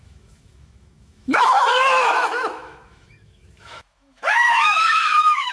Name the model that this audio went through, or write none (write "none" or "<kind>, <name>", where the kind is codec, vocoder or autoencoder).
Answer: autoencoder, DAC-VAE